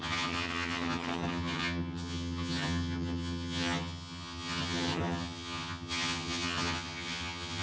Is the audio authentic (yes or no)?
no